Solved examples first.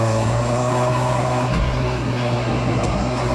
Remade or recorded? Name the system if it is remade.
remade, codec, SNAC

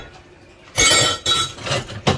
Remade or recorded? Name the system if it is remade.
recorded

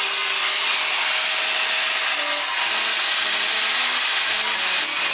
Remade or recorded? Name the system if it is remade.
recorded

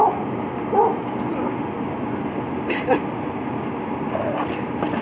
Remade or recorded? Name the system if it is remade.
recorded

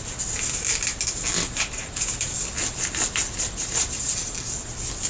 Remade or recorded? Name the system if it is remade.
recorded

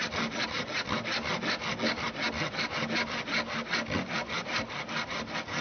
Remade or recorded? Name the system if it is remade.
recorded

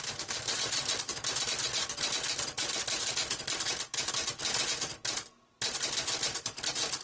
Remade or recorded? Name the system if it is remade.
recorded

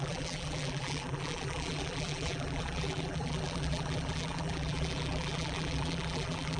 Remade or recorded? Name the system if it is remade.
remade, vocoder, BigVGAN v2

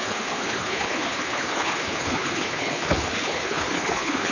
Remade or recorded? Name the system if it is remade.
remade, codec, HILCodec